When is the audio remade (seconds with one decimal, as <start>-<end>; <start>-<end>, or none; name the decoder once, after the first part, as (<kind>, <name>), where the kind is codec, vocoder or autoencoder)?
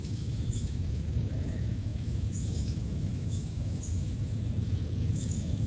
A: 0.0-5.7 (autoencoder, DAC-VAE)